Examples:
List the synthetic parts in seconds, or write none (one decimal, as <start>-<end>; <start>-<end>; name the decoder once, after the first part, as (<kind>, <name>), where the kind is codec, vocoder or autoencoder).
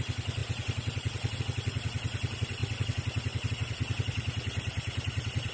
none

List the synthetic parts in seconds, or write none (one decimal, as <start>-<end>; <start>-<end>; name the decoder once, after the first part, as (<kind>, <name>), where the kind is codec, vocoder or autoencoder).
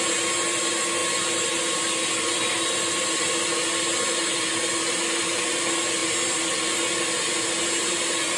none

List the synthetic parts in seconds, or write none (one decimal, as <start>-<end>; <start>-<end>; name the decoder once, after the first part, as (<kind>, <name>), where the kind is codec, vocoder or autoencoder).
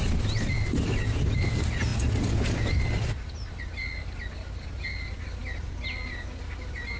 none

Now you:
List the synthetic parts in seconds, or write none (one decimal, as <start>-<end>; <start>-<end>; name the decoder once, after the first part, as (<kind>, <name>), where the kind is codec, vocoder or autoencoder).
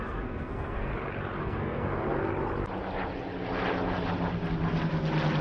0.0-0.9 (codec, SNAC); 1.4-2.3